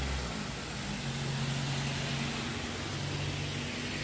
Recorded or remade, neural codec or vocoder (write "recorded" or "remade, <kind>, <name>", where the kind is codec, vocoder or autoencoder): recorded